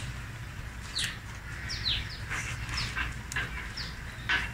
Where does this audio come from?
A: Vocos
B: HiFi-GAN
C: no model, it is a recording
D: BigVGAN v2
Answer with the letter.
C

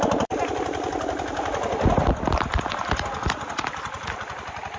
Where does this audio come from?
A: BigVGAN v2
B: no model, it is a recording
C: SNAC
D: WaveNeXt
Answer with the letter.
B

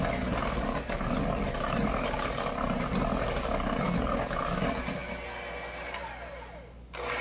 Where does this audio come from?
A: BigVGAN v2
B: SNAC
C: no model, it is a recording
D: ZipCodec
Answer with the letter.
C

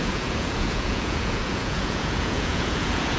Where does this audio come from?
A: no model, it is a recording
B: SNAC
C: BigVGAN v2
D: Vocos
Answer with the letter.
D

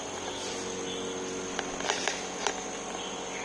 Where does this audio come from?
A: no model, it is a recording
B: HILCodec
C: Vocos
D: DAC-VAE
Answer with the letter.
A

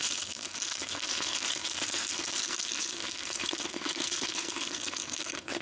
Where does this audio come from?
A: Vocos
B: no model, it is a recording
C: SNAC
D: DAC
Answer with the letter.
C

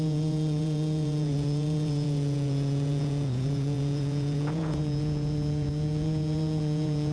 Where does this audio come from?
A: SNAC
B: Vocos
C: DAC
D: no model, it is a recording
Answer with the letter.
B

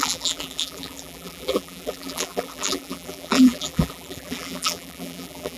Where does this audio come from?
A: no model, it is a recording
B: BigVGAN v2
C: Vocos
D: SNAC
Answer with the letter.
B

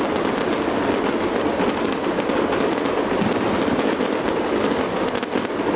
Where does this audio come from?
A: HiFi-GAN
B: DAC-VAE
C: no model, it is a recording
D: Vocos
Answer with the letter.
C